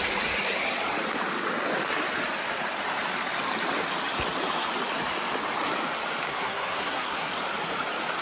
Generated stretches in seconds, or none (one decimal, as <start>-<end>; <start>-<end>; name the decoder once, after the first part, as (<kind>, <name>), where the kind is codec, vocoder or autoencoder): 6.3-7.3 (codec, SNAC)